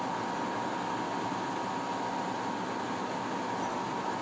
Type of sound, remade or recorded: recorded